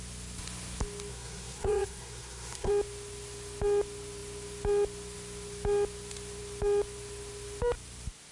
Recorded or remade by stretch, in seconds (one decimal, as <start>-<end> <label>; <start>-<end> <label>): 0.0-1.1 recorded; 1.1-2.7 remade; 2.7-8.3 recorded